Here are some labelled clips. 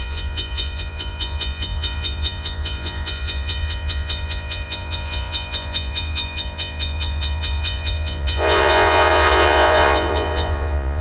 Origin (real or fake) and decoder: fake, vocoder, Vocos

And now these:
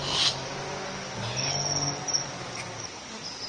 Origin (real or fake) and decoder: real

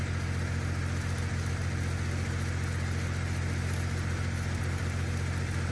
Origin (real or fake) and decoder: real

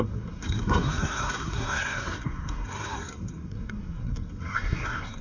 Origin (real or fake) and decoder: fake, codec, SNAC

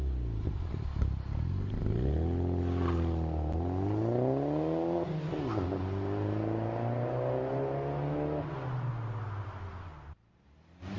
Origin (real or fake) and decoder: real